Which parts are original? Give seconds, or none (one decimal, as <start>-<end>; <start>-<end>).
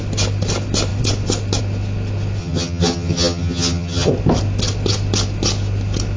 0.0-2.4; 4.1-6.2